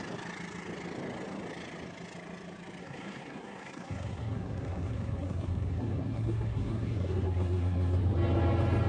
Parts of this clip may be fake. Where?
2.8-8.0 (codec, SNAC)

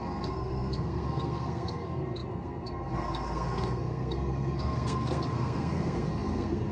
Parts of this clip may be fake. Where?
0.0-6.7 (codec, SNAC)

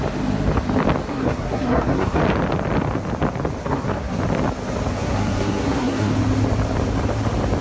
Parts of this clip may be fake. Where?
1.1-2.2 (codec, SNAC); 3.6-4.2; 5.0-6.1

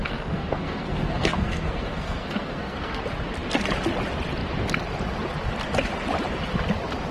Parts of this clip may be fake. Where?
0.0-3.0 (codec, SNAC)

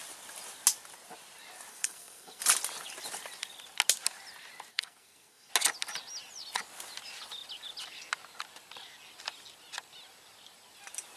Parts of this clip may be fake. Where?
1.7-2.4 (codec, SNAC); 4.7-5.5

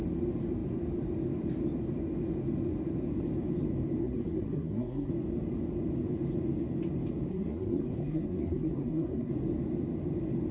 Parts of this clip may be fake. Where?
4.0-5.1 (codec, SNAC); 7.3-9.3

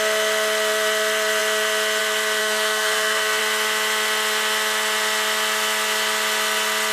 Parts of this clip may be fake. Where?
2.4-3.4 (codec, SNAC)

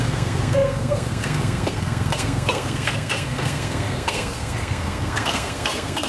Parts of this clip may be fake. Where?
0.0-6.1 (codec, SNAC)